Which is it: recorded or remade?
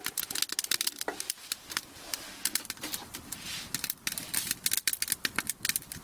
remade